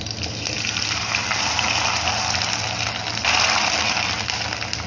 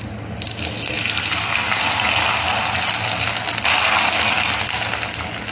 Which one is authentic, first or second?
second